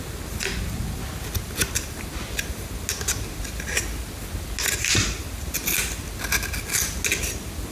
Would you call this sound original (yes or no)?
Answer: yes